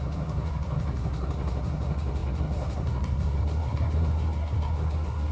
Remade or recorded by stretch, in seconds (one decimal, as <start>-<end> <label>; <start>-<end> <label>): 0.0-5.3 remade